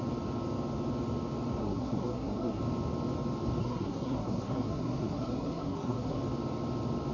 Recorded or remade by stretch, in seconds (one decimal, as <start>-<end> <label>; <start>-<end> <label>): 0.0-1.6 recorded; 1.6-2.6 remade; 2.6-3.6 recorded; 3.6-6.2 remade; 6.2-7.1 recorded